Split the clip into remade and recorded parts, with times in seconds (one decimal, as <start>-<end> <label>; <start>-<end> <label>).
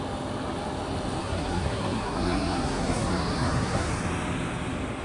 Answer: 0.0-1.2 recorded; 1.2-3.9 remade; 3.9-5.0 recorded